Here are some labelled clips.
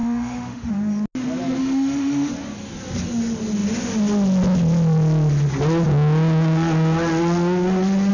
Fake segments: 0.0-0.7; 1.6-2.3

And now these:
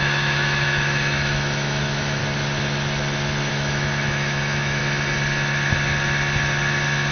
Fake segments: 0.0-2.2; 3.5-4.8

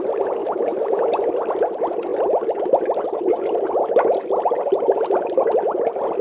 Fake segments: 0.4-1.1

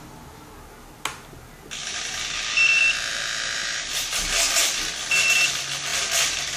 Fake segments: none

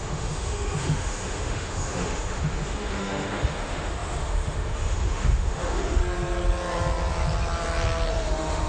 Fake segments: 0.0-6.0; 8.1-8.7

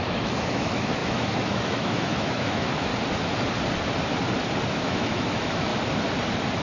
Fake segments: 0.0-2.9; 4.7-5.7

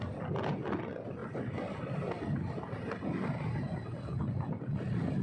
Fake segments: none